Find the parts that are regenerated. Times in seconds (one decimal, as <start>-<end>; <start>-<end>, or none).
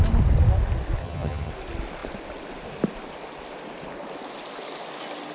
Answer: 1.0-1.5